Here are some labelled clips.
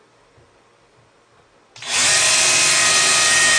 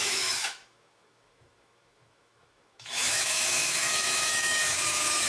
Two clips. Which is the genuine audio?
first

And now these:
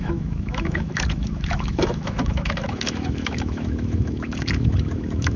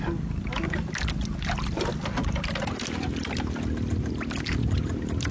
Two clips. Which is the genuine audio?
second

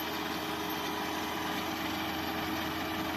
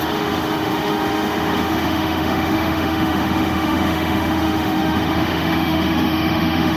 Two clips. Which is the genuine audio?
first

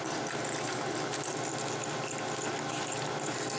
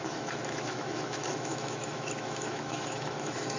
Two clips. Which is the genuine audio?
first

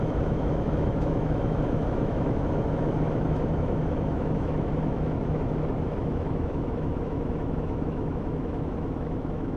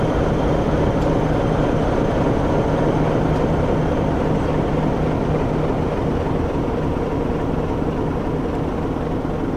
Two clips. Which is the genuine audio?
second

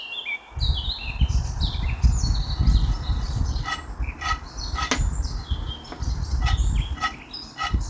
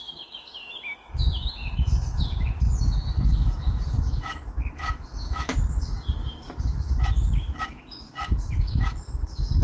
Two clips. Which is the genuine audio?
first